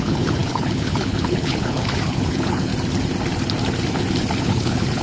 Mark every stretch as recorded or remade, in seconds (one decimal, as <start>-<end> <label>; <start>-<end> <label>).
0.0-2.7 remade; 2.7-4.4 recorded; 4.4-5.0 remade